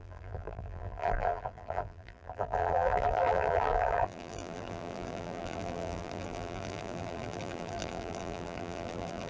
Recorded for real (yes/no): no